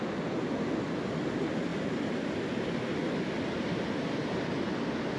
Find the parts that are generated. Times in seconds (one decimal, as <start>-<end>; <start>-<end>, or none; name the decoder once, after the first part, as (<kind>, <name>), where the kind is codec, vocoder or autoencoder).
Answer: none